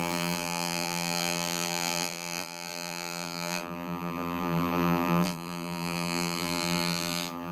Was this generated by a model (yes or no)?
yes